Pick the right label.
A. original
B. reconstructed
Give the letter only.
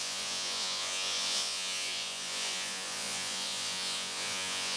B